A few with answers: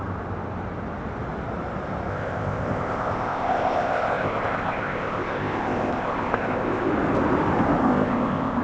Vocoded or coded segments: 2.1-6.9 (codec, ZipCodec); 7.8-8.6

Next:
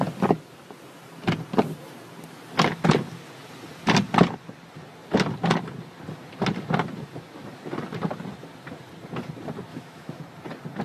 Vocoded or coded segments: 9.7-10.2 (autoencoder, DAC-VAE)